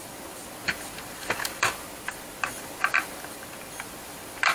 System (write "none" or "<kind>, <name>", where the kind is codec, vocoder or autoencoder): vocoder, BigVGAN v2